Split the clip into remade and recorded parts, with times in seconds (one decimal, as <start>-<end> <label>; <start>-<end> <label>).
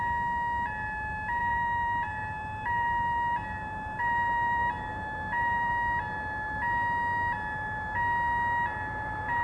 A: 0.0-1.4 recorded; 1.4-5.7 remade; 5.7-9.4 recorded